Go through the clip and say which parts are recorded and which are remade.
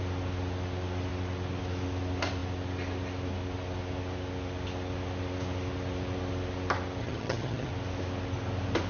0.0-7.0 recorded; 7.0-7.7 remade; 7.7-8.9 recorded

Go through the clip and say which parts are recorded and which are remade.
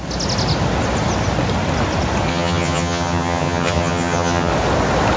0.0-2.3 recorded; 2.3-4.5 remade; 4.5-5.2 recorded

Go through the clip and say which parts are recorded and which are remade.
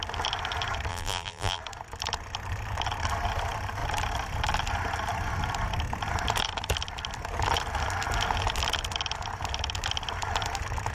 0.0-0.9 recorded; 0.9-1.6 remade; 1.6-10.9 recorded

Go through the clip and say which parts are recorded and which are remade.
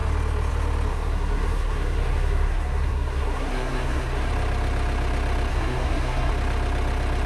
0.0-0.9 recorded; 0.9-4.3 remade; 4.3-5.5 recorded; 5.5-6.3 remade; 6.3-7.3 recorded